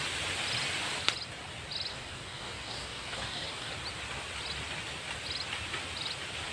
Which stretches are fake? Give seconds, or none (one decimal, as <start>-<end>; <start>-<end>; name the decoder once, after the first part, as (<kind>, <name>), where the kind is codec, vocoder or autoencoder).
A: 1.9-3.7 (codec, DAC)